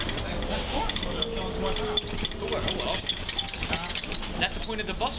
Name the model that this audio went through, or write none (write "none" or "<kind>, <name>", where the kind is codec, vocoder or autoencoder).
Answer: none